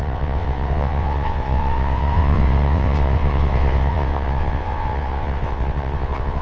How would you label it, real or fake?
fake